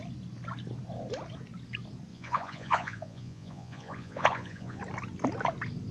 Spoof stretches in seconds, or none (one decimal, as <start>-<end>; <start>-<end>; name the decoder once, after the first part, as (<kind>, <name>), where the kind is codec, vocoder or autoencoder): 2.1-4.8 (vocoder, Vocos)